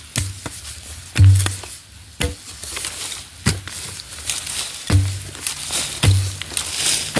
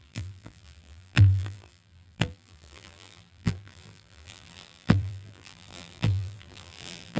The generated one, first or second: second